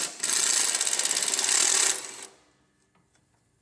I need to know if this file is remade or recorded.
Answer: recorded